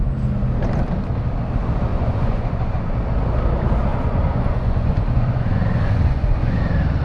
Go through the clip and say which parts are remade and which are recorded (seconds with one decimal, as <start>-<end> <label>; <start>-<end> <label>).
0.0-1.9 recorded; 1.9-2.8 remade; 2.8-3.9 recorded; 3.9-6.6 remade; 6.6-7.0 recorded